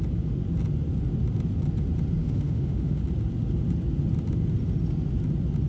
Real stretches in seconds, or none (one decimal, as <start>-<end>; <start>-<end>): 0.0-2.2; 3.0-5.7